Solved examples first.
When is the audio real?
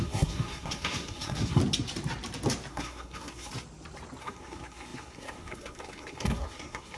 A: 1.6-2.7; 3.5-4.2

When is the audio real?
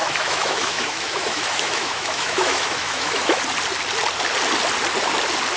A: 3.4-5.6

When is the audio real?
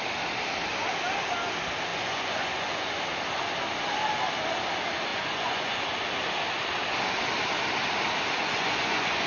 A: 0.0-1.9; 2.9-5.1; 5.8-8.4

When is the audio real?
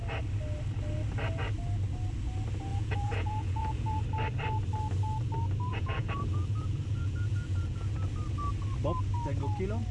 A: 0.0-2.7; 4.0-5.7; 8.1-9.9